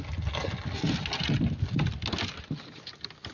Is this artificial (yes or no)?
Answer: no